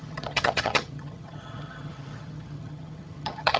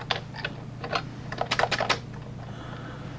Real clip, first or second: second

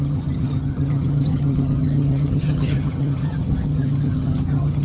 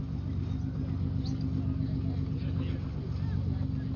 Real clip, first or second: second